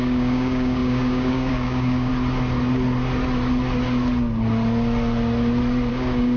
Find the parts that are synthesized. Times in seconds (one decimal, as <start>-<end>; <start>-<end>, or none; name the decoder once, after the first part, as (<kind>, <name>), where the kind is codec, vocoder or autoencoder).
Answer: 0.0-2.1 (codec, DAC); 5.9-6.4